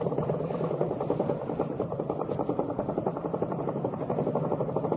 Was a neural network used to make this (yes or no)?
no